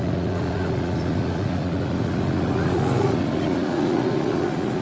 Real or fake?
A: fake